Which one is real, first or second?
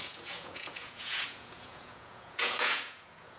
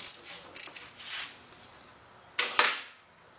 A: second